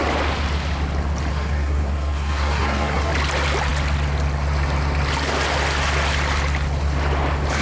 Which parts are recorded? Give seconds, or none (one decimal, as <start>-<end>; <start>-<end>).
0.0-1.3; 3.1-7.6